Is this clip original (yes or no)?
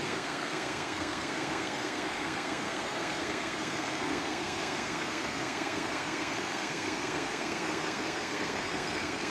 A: no